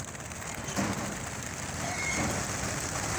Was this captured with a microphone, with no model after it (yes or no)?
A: yes